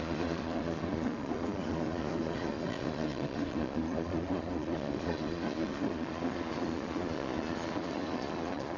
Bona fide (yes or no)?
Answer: no